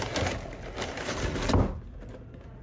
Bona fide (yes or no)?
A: yes